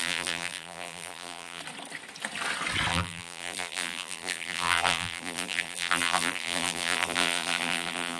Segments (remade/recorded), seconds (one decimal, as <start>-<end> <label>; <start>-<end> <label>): 0.0-1.6 remade; 1.6-2.9 recorded; 2.9-8.2 remade